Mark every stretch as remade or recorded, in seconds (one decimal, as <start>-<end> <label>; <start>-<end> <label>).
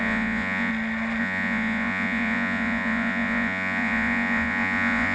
0.0-0.7 remade; 0.7-1.2 recorded; 1.2-5.1 remade